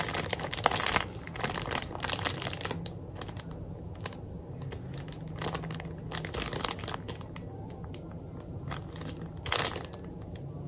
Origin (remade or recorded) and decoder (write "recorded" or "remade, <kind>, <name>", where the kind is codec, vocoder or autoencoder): recorded